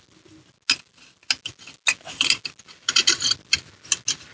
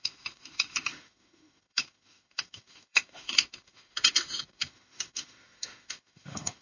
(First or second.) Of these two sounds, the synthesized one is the second